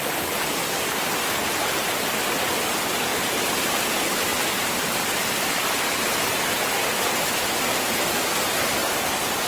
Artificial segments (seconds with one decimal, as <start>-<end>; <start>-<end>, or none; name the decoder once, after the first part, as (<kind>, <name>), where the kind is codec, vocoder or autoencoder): 3.1-3.8 (vocoder, BigVGAN v2); 4.3-6.7